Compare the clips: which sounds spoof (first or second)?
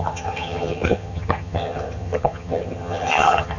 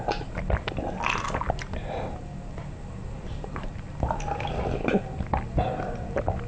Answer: first